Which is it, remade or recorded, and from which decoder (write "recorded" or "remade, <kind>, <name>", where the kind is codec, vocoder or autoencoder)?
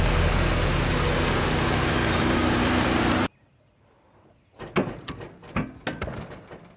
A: recorded